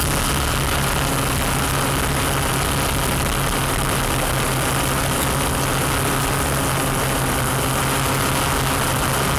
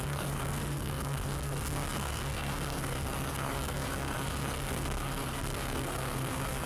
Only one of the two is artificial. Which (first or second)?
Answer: second